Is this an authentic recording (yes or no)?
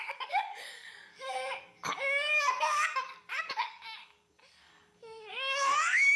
no